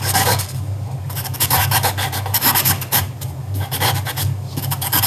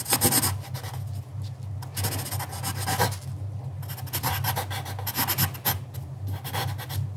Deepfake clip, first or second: first